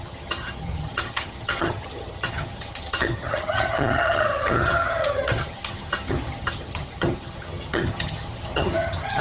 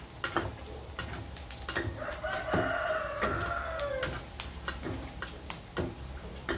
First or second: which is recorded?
second